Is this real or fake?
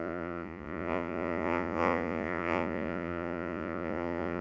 fake